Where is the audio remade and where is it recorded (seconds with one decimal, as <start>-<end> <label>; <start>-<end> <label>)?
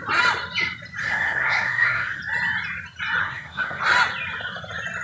0.0-1.0 recorded; 1.0-2.2 remade; 2.2-3.2 recorded; 3.2-3.8 remade; 3.8-5.0 recorded